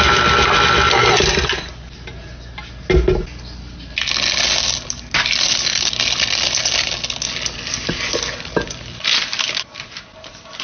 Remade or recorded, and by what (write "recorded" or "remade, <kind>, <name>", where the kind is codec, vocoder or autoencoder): recorded